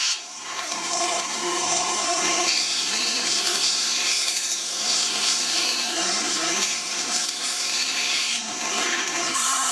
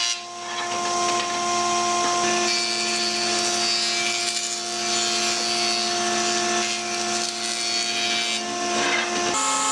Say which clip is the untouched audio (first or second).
second